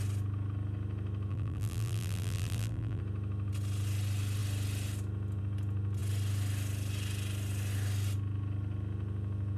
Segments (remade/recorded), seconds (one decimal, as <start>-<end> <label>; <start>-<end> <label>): 0.0-1.3 recorded; 1.3-3.0 remade; 3.0-9.6 recorded